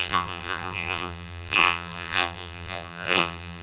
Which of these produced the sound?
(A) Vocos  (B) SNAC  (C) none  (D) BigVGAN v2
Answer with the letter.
D